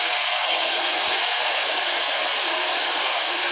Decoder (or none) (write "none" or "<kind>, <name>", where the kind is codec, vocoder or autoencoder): codec, SNAC